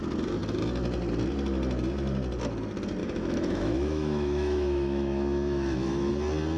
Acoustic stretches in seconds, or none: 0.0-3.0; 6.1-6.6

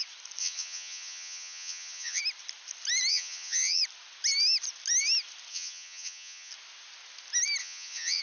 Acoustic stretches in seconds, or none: 0.0-0.4; 2.2-3.1; 3.8-5.5; 6.5-7.6

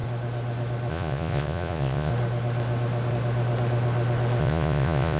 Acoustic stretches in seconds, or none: 0.0-0.9; 2.1-4.4

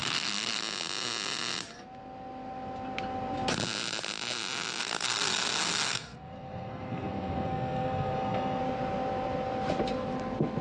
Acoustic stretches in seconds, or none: 0.6-4.8; 8.6-10.6

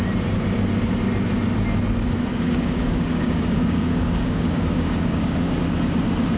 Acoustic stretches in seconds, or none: 0.0-2.3; 5.6-6.4

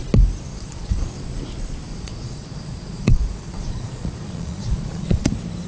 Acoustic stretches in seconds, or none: 0.0-0.5; 1.1-1.9; 5.3-5.7

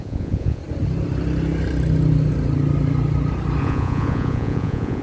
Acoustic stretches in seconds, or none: 0.6-3.6